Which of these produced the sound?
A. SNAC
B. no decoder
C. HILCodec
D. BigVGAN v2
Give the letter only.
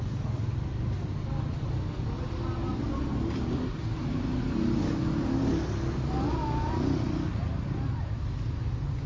B